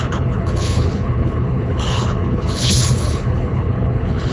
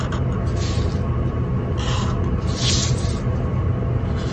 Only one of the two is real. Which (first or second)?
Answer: second